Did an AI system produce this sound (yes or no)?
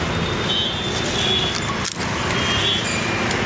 no